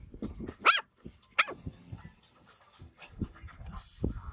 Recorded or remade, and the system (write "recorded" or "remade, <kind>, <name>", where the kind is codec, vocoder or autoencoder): recorded